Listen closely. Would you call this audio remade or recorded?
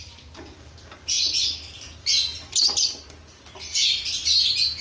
recorded